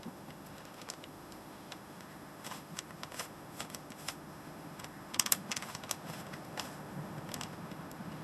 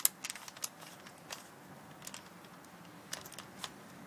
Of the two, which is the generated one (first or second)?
first